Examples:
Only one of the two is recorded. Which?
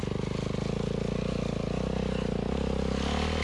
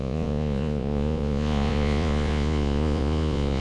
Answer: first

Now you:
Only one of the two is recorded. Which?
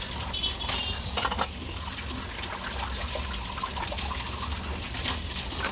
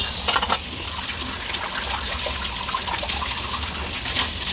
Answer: first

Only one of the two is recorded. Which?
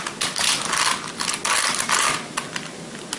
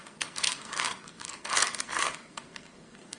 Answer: first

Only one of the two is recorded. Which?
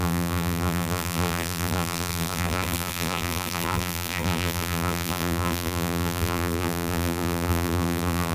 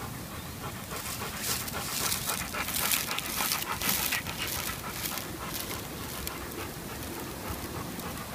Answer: second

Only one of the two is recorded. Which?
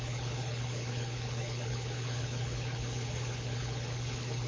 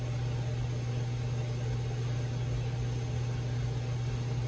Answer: second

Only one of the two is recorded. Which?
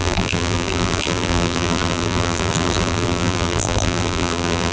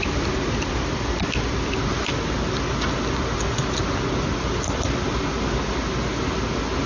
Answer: second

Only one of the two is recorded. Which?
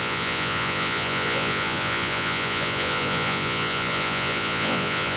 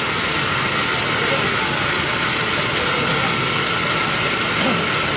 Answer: second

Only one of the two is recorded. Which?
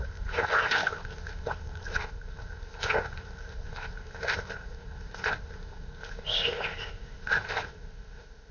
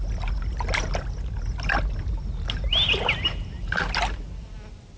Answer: second